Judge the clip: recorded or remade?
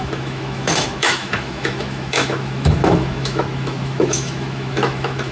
remade